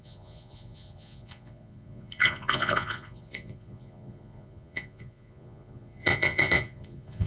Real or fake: fake